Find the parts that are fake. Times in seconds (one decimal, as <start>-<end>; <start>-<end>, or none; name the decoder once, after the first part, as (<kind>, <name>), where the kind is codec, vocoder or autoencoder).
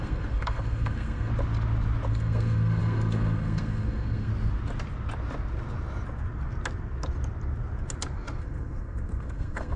0.0-1.3 (codec, SNAC); 2.1-4.3; 8.4-9.8